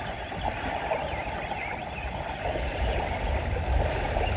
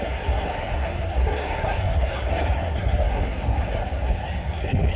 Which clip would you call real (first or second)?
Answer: first